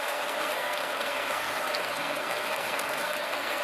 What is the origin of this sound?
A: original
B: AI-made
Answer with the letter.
B